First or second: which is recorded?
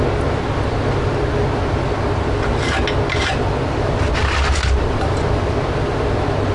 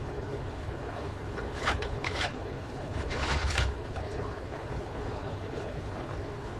first